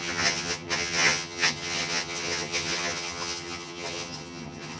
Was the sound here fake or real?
fake